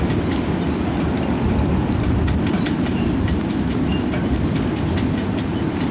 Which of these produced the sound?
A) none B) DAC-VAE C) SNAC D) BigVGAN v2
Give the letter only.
A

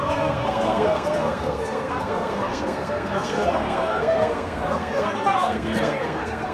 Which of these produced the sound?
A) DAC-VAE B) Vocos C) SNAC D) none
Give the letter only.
C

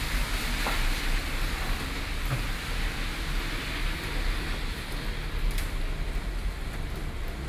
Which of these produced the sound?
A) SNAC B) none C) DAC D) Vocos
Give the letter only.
B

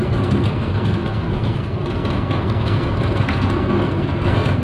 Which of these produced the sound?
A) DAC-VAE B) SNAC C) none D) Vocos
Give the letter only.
B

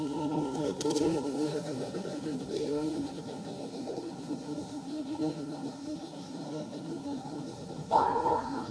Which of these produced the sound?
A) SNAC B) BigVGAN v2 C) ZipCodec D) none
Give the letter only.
A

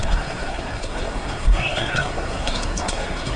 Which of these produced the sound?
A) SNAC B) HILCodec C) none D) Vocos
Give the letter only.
A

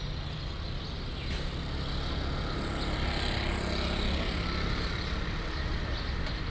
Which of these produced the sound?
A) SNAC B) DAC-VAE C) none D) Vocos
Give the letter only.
C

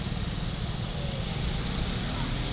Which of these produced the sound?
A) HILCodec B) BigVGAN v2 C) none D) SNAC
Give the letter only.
C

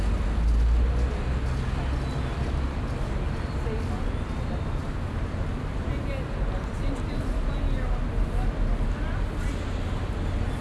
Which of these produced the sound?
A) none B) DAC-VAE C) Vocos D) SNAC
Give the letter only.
A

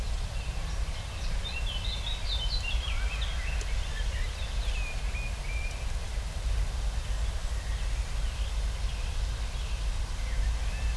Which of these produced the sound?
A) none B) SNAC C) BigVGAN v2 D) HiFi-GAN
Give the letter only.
A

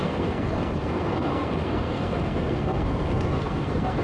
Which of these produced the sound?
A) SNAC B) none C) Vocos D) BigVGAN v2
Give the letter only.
A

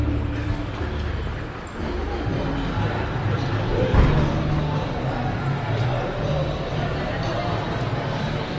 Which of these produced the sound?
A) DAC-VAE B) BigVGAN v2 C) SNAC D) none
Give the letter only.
D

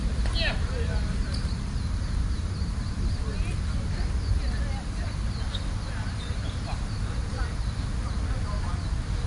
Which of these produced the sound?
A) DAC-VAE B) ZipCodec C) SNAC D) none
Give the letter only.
D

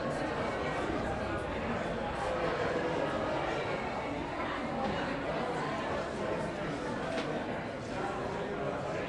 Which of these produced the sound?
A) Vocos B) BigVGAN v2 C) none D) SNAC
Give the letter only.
C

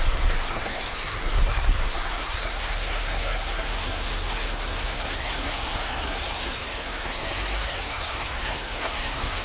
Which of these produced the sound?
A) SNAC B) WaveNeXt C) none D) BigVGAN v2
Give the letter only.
A